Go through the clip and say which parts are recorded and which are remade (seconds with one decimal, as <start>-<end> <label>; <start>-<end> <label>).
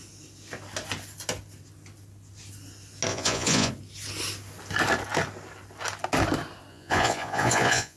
0.0-3.1 recorded; 3.1-3.7 remade; 3.7-6.7 recorded; 6.7-8.0 remade